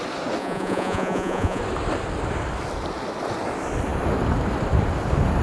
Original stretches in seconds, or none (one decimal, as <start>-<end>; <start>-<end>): 0.0-0.4; 1.6-5.4